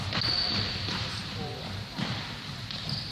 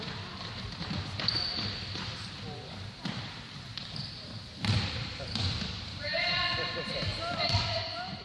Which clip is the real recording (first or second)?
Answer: first